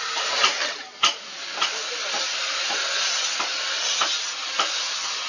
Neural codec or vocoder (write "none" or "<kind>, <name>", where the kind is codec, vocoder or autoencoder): none